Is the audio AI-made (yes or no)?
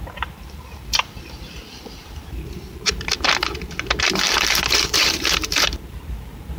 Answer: yes